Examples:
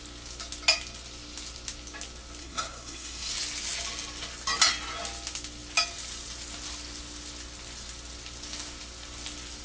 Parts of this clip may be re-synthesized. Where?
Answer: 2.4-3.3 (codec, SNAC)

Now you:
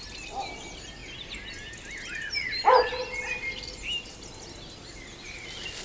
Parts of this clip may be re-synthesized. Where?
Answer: none